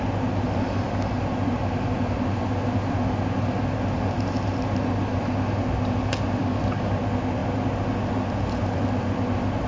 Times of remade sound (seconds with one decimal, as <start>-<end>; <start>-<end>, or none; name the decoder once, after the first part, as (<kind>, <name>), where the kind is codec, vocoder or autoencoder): 6.4-7.0 (codec, DAC)